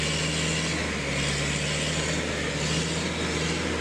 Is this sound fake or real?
real